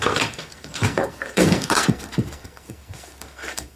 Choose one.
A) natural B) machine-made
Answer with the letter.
B